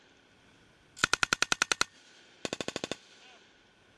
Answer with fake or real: real